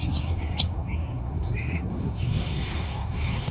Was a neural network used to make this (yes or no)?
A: yes